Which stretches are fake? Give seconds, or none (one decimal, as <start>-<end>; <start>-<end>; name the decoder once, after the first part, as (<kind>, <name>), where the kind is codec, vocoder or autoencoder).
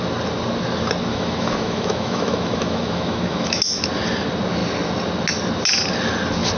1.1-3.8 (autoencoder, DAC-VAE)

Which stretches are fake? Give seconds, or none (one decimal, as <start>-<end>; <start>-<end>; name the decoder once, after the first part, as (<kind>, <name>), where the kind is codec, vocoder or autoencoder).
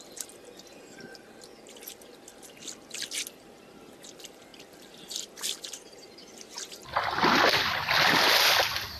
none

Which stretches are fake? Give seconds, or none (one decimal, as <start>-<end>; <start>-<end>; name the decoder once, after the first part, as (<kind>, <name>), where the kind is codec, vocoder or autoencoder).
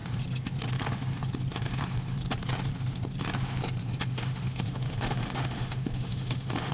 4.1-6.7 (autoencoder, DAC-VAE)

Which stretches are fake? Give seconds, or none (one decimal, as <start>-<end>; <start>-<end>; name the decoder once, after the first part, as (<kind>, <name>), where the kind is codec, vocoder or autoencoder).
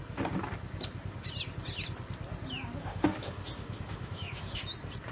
2.8-4.6 (autoencoder, DAC-VAE)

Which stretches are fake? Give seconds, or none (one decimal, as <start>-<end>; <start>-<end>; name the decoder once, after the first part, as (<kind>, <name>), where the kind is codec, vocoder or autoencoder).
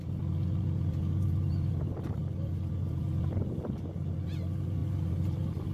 none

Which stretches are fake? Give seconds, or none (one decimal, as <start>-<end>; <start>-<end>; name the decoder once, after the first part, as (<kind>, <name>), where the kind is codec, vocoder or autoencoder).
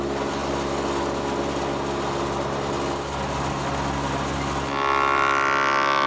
none